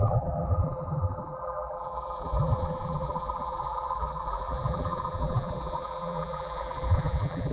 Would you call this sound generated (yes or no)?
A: yes